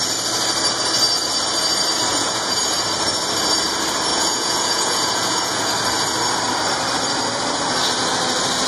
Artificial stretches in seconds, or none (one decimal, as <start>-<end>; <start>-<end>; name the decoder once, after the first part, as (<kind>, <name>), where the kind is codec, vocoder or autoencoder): 2.1-2.6 (vocoder, Vocos); 4.1-5.7